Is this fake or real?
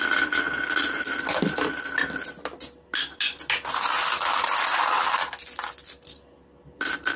real